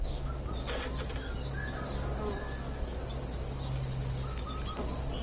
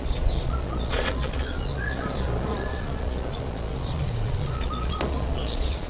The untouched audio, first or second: first